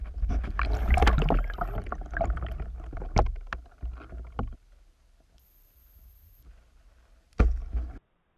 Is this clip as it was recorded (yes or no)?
yes